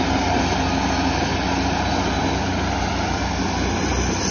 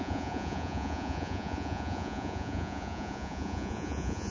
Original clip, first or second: first